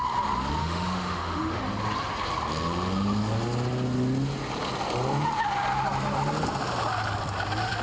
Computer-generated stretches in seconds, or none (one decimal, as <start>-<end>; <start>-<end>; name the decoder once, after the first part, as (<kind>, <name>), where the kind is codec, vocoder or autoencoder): 0.6-1.6 (autoencoder, DAC-VAE)